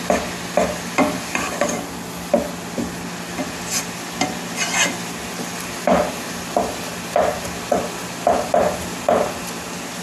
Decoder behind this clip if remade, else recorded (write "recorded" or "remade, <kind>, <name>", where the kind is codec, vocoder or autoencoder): recorded